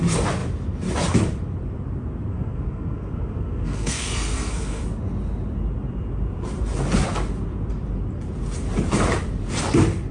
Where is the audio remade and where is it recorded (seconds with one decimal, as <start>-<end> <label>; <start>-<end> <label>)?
0.0-2.3 recorded; 2.3-4.8 remade; 4.8-10.1 recorded